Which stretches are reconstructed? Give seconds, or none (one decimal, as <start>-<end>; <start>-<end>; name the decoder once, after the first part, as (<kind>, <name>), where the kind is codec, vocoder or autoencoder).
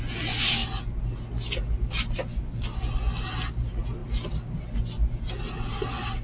none